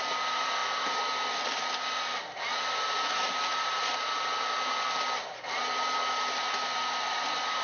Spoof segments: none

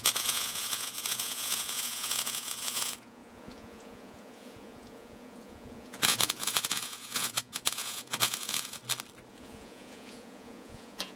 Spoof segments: 0.0-8.8 (vocoder, Vocos); 9.3-11.2

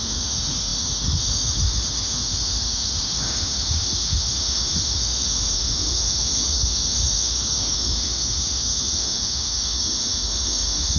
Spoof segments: 0.0-11.0 (autoencoder, DAC-VAE)